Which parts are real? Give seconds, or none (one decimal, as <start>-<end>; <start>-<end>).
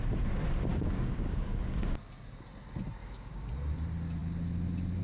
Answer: 0.0-0.7; 2.0-3.0; 3.5-5.0